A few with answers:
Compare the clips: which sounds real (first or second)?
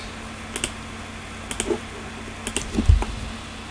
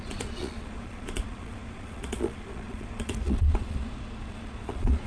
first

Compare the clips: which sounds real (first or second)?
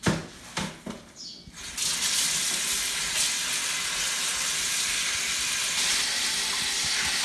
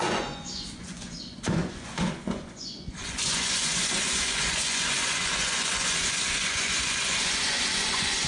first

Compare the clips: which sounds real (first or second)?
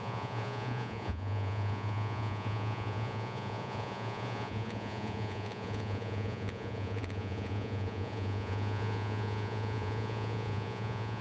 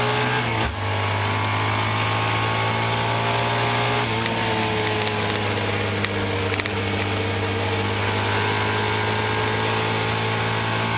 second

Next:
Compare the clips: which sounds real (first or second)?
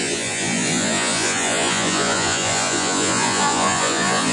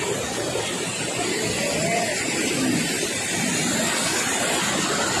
second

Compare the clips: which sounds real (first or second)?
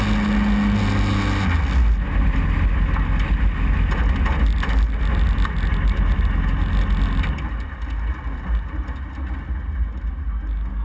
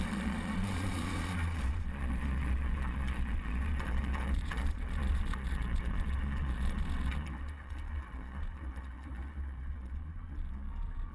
first